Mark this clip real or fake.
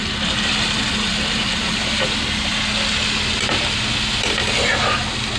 real